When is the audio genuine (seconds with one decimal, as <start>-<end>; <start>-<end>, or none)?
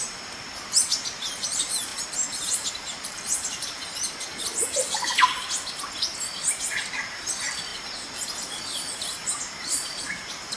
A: 1.9-2.7; 3.8-7.0; 7.7-8.6